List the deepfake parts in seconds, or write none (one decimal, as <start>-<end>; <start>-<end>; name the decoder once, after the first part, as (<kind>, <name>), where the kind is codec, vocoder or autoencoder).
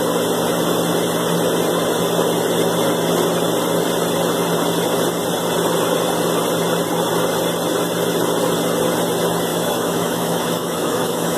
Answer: 9.5-11.4 (autoencoder, DAC-VAE)